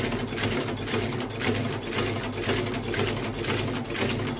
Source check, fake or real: real